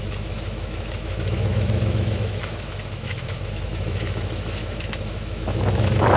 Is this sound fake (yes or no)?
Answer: yes